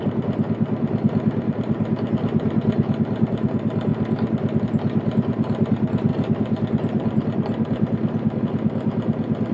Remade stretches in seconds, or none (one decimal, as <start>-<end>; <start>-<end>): 0.0-3.9; 4.6-9.5